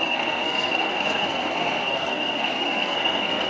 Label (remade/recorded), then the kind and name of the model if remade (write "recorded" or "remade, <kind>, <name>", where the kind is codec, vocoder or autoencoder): remade, codec, SNAC